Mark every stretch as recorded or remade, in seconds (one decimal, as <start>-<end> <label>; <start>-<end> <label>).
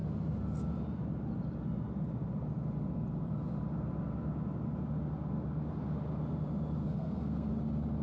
0.0-6.8 recorded; 6.8-7.5 remade; 7.5-8.0 recorded